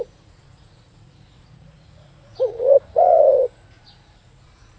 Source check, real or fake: fake